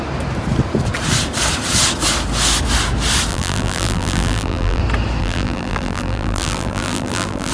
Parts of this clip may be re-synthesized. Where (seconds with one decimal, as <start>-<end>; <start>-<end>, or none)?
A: 3.3-4.8; 5.2-7.5